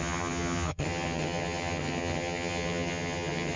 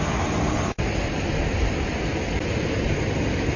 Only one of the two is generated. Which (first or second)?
first